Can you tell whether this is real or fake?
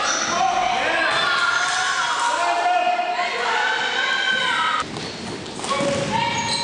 real